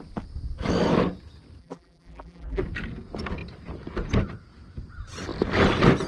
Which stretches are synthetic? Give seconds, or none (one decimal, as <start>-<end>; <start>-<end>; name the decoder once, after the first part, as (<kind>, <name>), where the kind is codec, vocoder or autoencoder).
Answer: 1.6-2.6 (vocoder, BigVGAN v2)